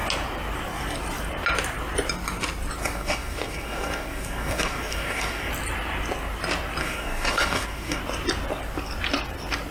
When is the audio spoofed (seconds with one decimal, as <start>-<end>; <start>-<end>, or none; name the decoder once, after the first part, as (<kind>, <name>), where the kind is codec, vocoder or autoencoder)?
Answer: 2.8-5.5 (codec, DAC); 6.8-8.0